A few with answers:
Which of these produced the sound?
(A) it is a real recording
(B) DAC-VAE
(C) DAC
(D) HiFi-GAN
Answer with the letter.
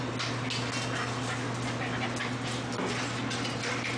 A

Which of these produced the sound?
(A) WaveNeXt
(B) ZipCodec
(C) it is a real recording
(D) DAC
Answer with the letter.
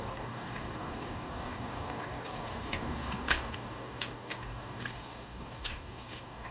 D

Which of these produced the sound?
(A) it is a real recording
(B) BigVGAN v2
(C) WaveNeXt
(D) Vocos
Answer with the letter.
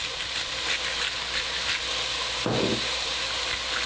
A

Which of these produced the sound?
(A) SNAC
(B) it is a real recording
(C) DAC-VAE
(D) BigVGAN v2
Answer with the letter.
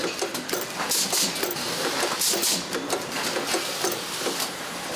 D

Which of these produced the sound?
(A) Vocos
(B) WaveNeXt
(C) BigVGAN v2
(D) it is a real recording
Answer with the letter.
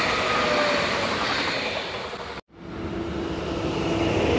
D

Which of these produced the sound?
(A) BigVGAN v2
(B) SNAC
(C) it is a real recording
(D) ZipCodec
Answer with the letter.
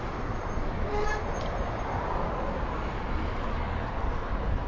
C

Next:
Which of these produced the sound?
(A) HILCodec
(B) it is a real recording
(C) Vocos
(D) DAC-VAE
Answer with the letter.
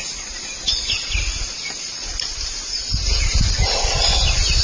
B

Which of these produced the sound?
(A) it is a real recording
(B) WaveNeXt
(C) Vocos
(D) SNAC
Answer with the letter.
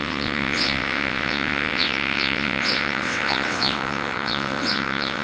B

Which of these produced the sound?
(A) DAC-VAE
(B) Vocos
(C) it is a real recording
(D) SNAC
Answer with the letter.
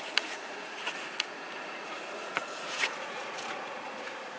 B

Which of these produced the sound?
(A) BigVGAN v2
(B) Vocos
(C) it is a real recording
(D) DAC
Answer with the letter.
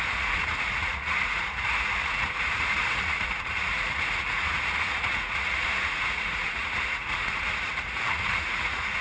B